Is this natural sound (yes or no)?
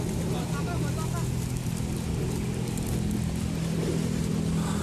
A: yes